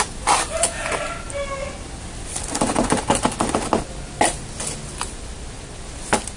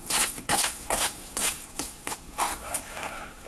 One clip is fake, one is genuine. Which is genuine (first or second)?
first